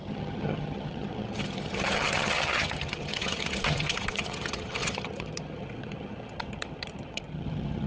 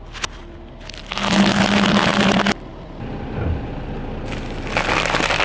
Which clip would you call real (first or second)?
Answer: second